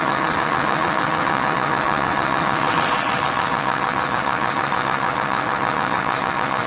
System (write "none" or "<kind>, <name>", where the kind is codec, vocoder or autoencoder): vocoder, WaveNeXt